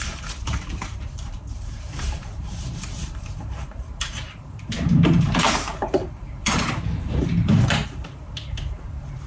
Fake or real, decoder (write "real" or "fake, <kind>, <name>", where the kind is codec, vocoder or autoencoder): fake, vocoder, BigVGAN v2